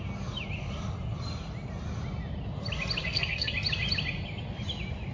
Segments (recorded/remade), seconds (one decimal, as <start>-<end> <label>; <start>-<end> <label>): 0.0-3.0 recorded; 3.0-3.5 remade; 3.5-5.1 recorded